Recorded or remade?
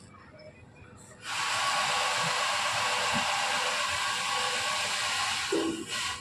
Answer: recorded